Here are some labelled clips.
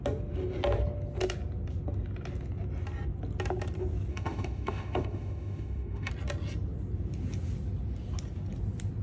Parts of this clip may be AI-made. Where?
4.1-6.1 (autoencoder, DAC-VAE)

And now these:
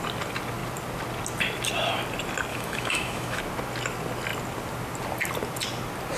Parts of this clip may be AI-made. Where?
2.5-3.4 (autoencoder, DAC-VAE)

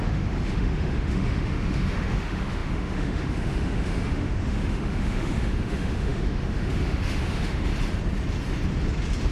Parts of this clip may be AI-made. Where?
0.0-7.7 (autoencoder, DAC-VAE)

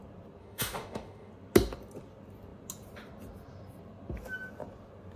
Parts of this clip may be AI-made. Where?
0.4-1.3 (autoencoder, DAC-VAE)

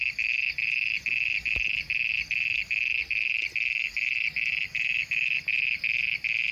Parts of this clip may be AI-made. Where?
none

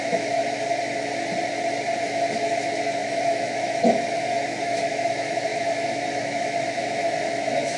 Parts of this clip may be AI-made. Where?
0.0-0.4 (autoencoder, DAC-VAE); 2.0-7.8

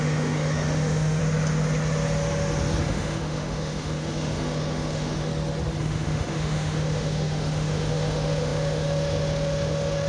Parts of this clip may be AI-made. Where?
0.0-1.2 (autoencoder, DAC-VAE); 2.8-5.3; 5.8-10.1